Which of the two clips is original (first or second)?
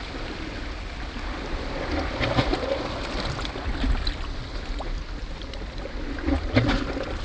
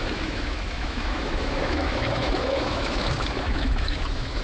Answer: first